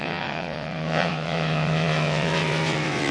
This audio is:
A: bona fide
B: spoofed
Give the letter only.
B